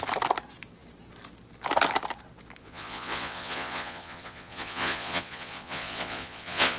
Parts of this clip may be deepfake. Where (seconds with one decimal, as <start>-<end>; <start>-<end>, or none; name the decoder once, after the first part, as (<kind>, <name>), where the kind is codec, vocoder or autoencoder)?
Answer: 2.6-6.8 (vocoder, Vocos)